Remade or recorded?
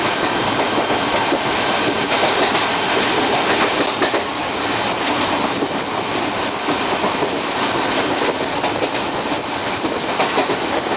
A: recorded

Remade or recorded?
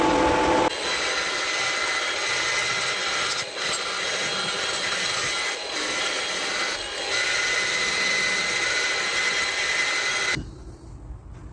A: recorded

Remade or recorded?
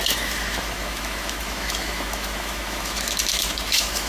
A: remade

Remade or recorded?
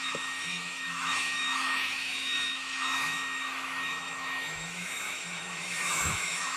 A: remade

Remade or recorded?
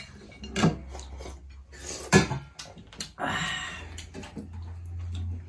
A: recorded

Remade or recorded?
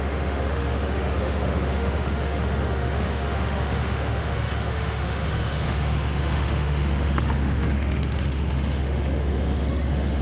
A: remade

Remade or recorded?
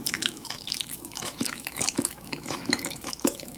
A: remade